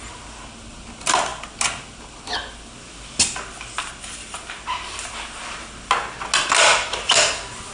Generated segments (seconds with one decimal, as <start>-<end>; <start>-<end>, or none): none